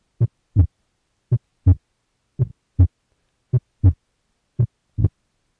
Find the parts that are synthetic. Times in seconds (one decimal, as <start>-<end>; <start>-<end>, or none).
none